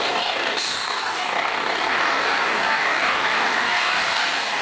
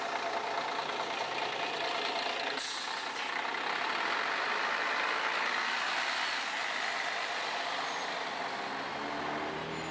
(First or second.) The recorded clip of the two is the second